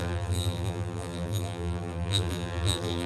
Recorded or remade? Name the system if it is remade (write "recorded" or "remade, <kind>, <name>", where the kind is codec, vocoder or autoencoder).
remade, vocoder, BigVGAN v2